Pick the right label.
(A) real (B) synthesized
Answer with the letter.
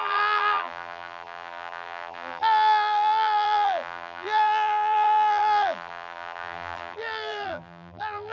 B